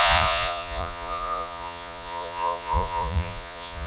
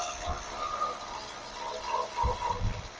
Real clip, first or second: second